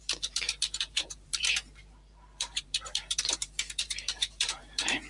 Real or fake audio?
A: fake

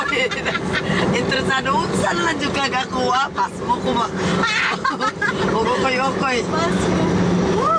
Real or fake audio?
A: real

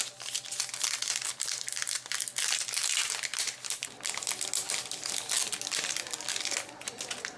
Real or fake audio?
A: real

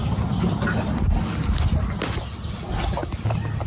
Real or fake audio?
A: real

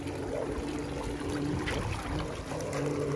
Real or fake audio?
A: real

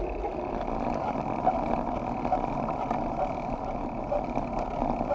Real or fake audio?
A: real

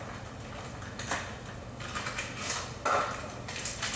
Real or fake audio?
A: real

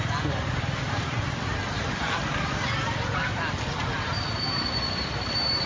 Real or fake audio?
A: real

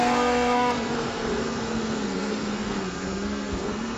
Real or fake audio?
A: fake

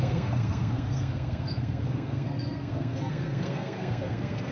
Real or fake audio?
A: fake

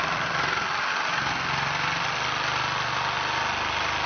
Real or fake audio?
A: real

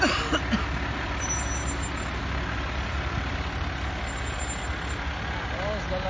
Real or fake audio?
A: real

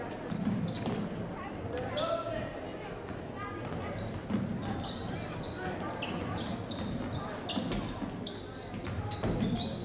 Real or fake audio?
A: real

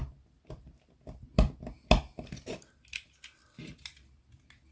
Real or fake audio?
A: real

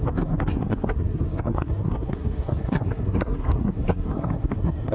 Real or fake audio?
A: fake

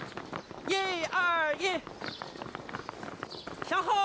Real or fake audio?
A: real